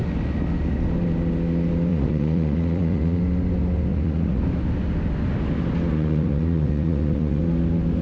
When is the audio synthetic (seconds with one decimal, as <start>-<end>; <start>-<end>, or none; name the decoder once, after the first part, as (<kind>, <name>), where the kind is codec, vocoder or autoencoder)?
1.9-3.2 (vocoder, Vocos); 3.9-4.4; 5.9-7.4